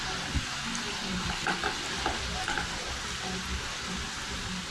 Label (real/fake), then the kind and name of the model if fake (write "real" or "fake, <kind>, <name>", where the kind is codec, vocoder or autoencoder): real